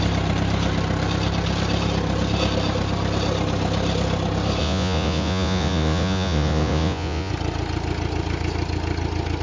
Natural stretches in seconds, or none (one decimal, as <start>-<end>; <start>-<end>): 0.0-4.6; 7.3-9.4